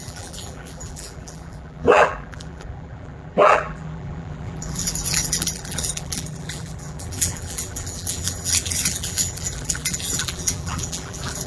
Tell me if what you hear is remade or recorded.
remade